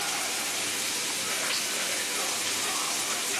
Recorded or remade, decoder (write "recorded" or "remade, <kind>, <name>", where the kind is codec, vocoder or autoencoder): recorded